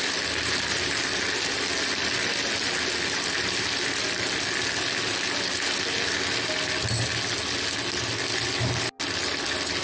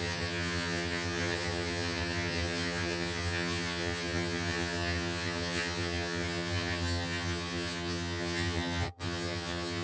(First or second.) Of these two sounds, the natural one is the first